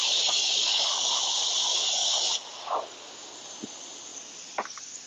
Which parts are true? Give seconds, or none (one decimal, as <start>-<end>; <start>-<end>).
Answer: 1.1-1.6; 2.3-5.1